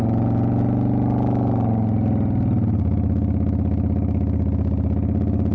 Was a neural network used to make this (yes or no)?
no